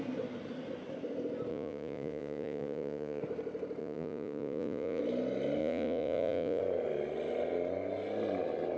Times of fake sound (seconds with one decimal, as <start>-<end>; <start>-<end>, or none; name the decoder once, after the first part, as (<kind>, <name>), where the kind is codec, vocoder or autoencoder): 1.5-3.2 (vocoder, Vocos); 3.8-5.0; 5.6-6.6